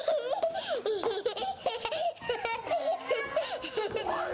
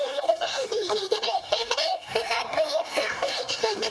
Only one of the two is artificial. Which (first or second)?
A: second